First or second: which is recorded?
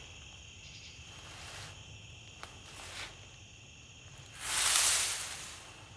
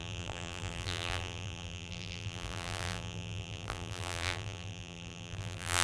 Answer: first